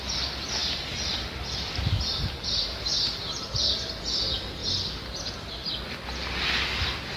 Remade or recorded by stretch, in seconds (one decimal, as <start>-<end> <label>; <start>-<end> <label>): 0.0-7.2 recorded